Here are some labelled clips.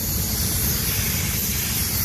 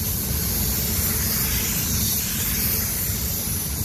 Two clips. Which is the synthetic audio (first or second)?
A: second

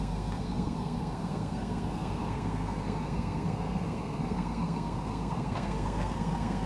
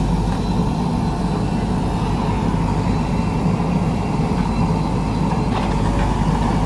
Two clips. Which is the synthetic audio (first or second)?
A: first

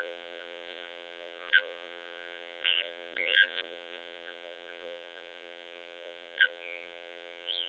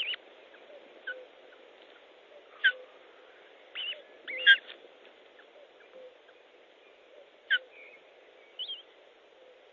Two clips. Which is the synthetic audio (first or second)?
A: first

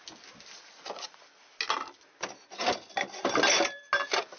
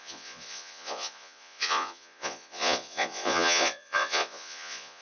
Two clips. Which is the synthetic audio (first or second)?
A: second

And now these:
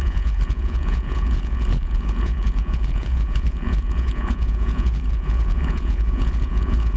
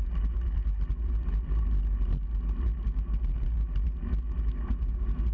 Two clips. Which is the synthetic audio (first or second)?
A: first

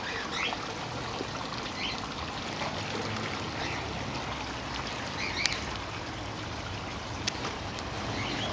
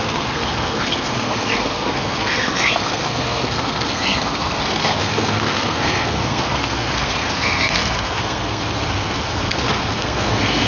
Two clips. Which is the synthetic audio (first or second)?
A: second